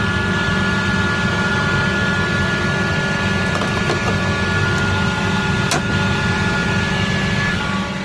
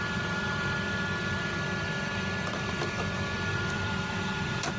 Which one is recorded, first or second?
first